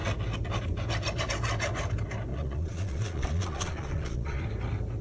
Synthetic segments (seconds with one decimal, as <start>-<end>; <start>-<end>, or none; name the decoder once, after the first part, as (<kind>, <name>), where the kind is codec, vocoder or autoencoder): 2.3-4.4 (vocoder, Vocos)